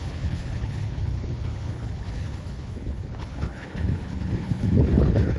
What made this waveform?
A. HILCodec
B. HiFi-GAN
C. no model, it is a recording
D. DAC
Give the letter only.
A